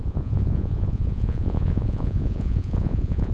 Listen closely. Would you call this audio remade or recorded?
remade